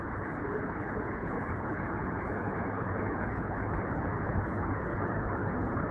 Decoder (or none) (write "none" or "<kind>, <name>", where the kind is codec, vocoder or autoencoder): codec, HILCodec